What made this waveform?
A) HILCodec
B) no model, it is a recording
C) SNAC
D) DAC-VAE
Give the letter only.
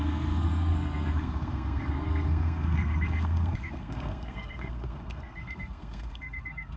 C